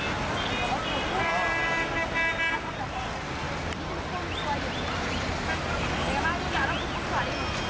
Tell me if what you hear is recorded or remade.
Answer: recorded